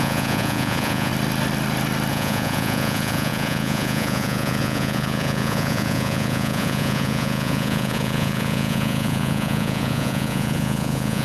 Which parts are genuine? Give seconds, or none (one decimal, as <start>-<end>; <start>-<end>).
1.1-2.1

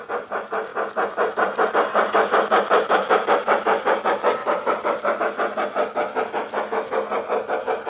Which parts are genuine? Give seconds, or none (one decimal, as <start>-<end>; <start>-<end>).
0.0-4.4; 5.2-7.9

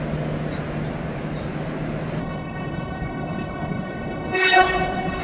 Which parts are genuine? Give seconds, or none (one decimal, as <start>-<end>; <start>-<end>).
0.0-2.2

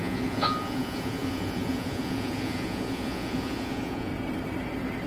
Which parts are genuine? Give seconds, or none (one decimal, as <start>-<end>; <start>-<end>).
4.1-5.1

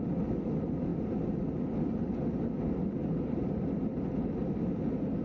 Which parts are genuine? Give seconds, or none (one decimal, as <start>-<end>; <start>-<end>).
0.0-3.0; 4.2-5.2

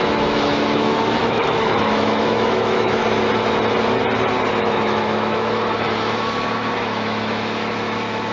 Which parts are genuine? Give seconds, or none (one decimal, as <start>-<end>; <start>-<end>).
3.0-4.6